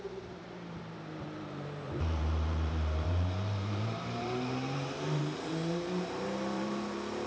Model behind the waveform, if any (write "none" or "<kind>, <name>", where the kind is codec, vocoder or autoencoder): vocoder, BigVGAN v2